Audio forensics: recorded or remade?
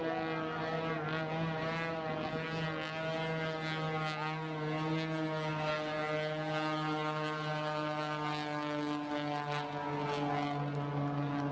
recorded